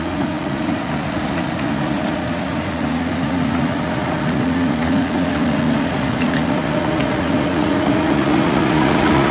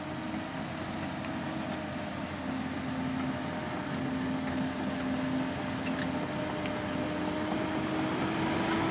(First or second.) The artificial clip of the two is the first